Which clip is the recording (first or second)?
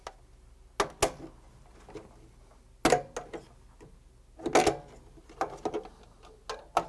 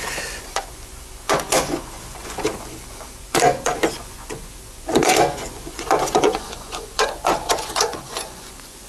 first